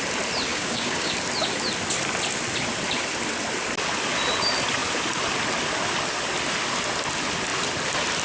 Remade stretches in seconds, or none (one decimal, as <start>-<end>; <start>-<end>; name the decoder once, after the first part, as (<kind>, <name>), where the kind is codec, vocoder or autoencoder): 0.5-1.1 (codec, DAC)